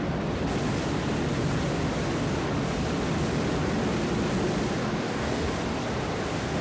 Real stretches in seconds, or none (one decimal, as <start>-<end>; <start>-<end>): 0.0-4.8; 5.5-6.6